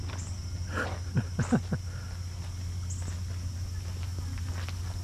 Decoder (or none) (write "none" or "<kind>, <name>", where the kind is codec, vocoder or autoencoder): none